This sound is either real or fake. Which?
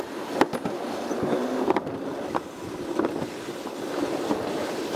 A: real